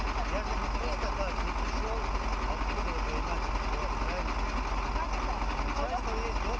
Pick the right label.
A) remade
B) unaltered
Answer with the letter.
B